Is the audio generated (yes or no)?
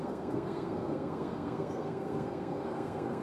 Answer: yes